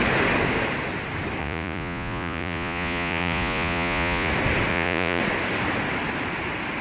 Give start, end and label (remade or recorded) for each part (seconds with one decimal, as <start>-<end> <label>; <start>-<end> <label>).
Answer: 0.0-1.4 recorded; 1.4-4.3 remade; 4.3-4.7 recorded; 4.7-5.2 remade; 5.2-6.8 recorded